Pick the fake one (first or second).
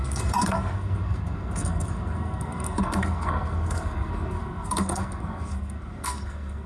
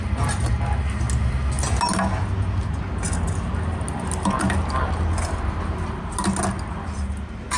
first